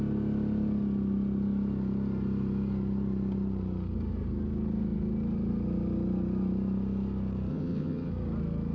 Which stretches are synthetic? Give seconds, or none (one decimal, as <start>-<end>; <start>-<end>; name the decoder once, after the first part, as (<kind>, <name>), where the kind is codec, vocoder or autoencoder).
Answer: 7.5-8.1 (vocoder, HiFi-GAN)